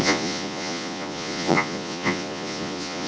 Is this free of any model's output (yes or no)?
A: no